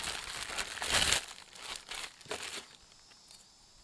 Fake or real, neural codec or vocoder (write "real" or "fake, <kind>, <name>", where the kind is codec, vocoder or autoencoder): real